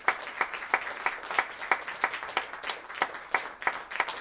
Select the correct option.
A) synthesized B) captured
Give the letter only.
B